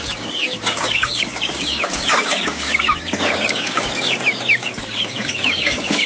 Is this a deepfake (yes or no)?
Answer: yes